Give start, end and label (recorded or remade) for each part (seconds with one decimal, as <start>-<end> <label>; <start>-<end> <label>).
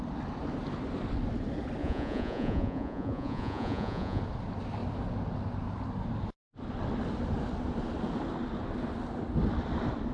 0.0-1.8 recorded; 1.8-4.2 remade; 4.2-10.1 recorded